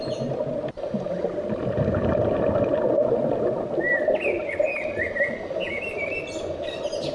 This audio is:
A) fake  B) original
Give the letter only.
B